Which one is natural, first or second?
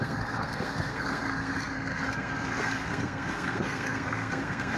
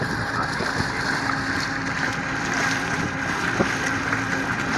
second